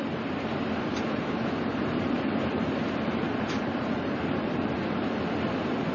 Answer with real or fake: fake